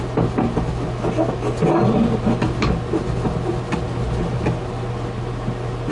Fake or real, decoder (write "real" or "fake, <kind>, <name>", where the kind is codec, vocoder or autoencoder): real